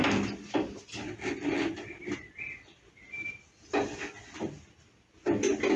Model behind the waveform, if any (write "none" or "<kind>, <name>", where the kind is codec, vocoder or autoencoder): none